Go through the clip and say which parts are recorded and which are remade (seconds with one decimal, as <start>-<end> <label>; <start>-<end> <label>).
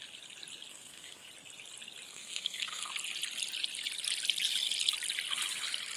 0.0-0.7 recorded; 0.7-1.3 remade; 1.3-2.1 recorded; 2.1-2.9 remade; 2.9-6.0 recorded